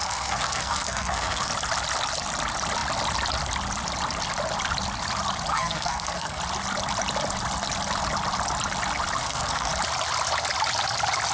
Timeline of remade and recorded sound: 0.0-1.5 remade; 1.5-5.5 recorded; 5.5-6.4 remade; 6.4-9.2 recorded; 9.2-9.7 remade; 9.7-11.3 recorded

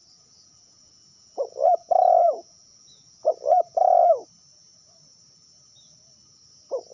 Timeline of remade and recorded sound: 0.0-4.1 remade; 4.1-6.9 recorded

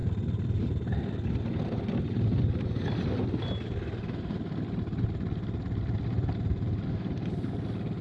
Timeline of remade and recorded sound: 0.0-8.0 recorded